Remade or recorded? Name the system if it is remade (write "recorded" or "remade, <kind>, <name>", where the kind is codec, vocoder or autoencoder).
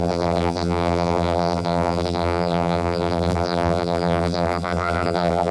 remade, vocoder, BigVGAN v2